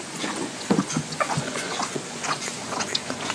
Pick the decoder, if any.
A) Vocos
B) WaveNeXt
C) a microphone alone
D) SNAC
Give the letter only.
A